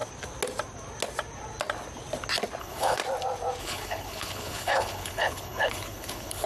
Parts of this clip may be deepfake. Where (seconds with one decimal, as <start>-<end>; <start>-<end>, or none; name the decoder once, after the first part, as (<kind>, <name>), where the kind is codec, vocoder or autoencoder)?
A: 2.6-3.0 (codec, HILCodec); 3.6-6.5